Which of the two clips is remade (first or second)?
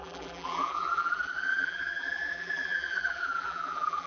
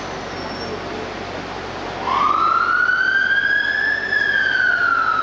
first